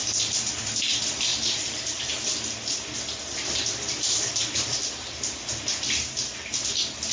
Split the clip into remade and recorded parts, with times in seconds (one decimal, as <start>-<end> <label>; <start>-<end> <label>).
0.0-1.3 recorded; 1.3-2.1 remade; 2.1-3.3 recorded; 3.3-5.5 remade; 5.5-7.1 recorded